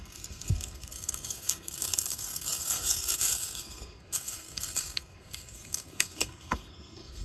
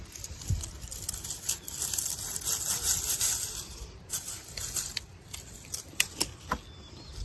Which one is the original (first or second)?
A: second